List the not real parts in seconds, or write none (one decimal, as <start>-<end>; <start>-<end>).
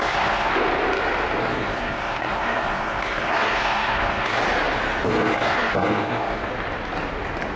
0.0-0.5; 1.4-4.4; 5.1-6.5